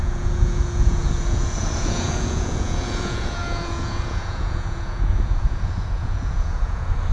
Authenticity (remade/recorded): remade